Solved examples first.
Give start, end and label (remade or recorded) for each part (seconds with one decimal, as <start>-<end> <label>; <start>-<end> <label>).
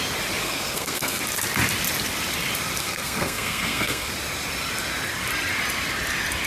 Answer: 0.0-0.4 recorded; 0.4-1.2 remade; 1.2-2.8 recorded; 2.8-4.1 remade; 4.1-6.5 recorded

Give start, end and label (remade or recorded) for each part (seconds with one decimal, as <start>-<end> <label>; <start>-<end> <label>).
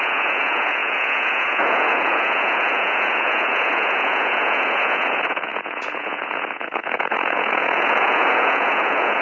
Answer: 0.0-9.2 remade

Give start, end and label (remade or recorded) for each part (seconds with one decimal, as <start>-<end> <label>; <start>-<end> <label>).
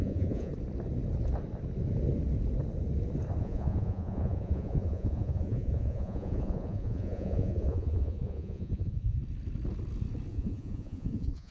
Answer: 0.0-0.5 remade; 0.5-3.4 recorded; 3.4-9.2 remade; 9.2-10.3 recorded; 10.3-11.5 remade